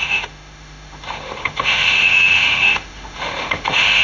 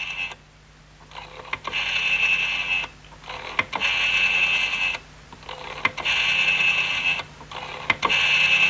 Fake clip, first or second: first